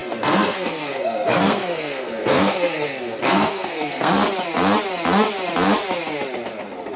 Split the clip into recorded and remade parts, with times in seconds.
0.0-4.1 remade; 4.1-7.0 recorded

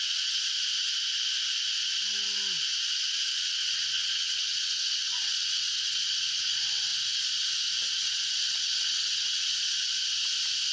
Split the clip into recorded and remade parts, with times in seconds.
0.0-0.5 remade; 0.5-3.1 recorded; 3.1-6.9 remade; 6.9-8.0 recorded; 8.0-9.5 remade; 9.5-10.7 recorded